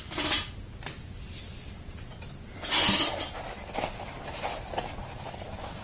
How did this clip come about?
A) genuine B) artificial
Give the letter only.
A